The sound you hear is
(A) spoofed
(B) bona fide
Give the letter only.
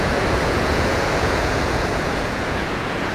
A